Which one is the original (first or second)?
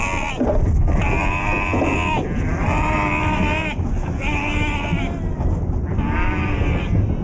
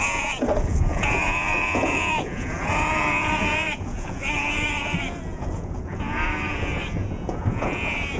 first